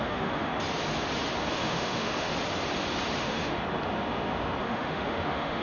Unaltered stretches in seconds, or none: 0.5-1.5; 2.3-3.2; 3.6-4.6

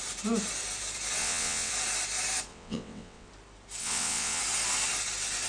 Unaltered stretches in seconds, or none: 0.0-1.2; 1.7-2.5; 3.3-3.8; 4.4-5.5

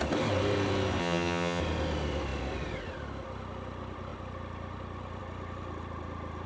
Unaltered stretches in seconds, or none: 0.0-1.0; 1.6-6.5

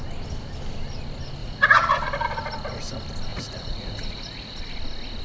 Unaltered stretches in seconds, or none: 0.0-1.4; 1.9-3.3; 4.6-5.2

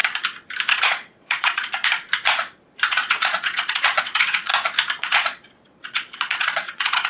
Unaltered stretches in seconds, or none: 0.0-0.7; 1.8-2.9; 4.5-5.0

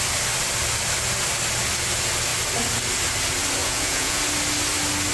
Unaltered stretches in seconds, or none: 0.0-3.6; 4.2-5.1

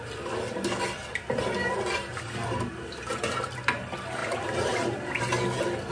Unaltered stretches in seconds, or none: 0.0-5.9